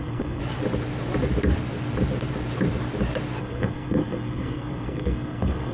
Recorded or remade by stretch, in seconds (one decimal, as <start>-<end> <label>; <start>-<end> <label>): 0.0-0.4 remade; 0.4-3.4 recorded; 3.4-5.7 remade